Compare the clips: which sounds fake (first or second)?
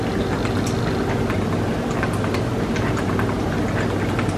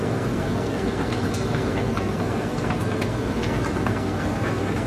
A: second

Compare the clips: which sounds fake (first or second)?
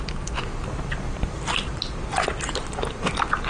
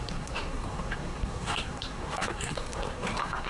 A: second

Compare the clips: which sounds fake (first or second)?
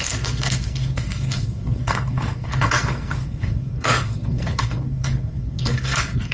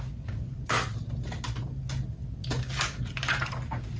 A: first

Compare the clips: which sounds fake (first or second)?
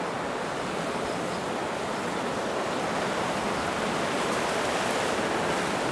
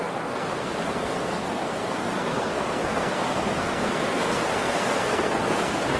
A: second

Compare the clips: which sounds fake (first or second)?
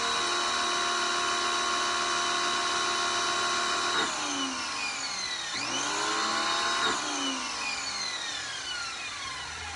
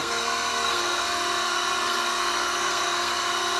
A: second